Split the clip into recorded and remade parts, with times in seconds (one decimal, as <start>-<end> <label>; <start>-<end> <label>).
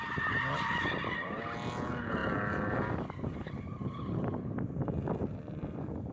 0.0-6.1 recorded